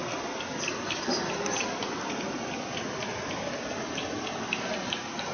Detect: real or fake real